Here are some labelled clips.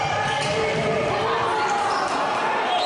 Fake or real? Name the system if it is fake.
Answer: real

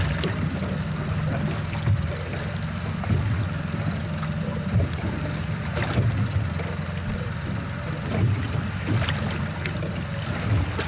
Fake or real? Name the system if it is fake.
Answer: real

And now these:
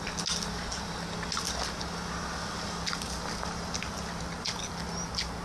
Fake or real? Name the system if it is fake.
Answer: real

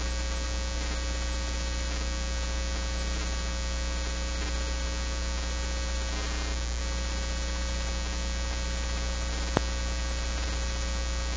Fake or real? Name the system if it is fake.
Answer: real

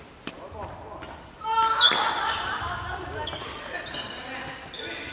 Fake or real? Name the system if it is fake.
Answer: real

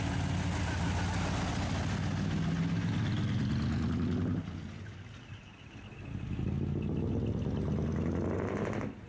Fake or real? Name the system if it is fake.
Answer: real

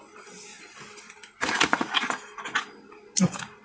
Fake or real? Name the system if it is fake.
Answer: real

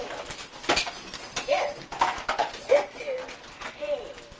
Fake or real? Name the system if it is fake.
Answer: real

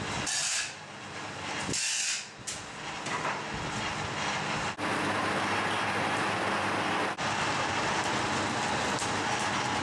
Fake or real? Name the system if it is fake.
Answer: real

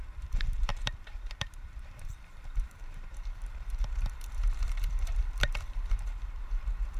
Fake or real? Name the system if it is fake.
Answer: fake, vocoder, BigVGAN v2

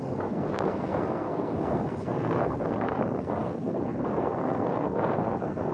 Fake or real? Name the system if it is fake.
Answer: fake, codec, SNAC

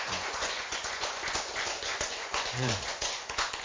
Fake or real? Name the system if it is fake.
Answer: fake, vocoder, Vocos